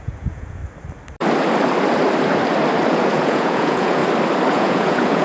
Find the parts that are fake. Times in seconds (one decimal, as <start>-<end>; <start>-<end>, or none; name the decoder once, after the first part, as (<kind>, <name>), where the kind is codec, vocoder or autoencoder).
0.0-0.6 (vocoder, Vocos); 2.9-4.0; 4.5-5.2